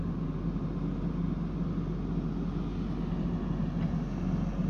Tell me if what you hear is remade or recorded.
recorded